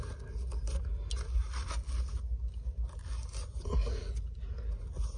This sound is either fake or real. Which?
real